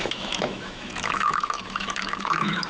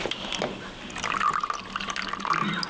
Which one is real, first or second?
second